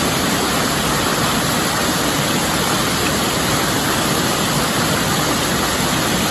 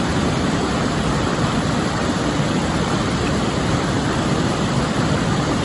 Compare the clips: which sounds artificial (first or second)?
second